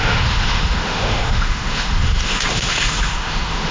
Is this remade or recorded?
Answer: remade